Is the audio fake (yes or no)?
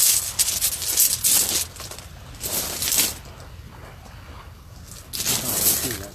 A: no